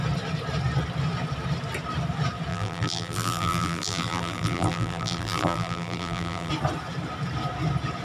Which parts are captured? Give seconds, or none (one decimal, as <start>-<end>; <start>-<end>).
0.0-2.5; 6.5-8.0